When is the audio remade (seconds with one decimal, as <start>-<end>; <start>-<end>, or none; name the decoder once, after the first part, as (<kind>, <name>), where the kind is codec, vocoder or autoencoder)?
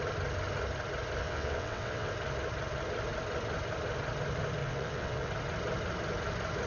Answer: 1.2-2.1 (vocoder, WaveNeXt); 4.6-5.3